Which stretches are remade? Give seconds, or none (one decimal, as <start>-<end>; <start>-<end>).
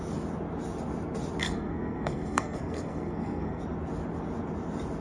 1.4-3.6